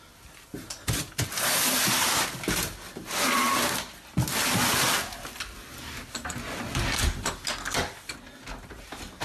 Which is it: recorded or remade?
recorded